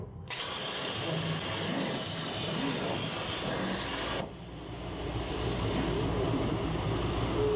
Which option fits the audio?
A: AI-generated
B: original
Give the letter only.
B